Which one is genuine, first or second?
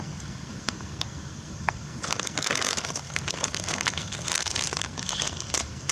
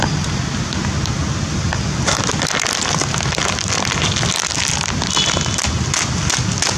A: second